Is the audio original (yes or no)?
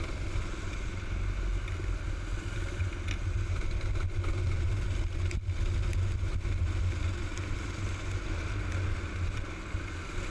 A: yes